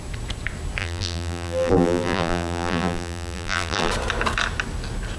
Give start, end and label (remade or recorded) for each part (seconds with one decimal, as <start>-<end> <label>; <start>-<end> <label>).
0.0-0.8 recorded; 0.8-3.9 remade; 3.9-5.2 recorded